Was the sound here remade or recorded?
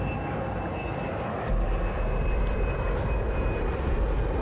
recorded